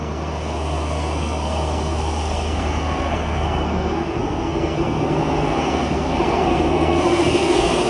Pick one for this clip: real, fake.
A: fake